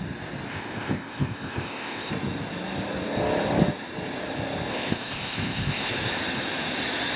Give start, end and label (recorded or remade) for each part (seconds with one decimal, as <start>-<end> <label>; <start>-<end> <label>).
0.0-0.5 recorded; 0.5-2.1 remade; 2.1-4.7 recorded; 4.7-5.9 remade; 5.9-7.2 recorded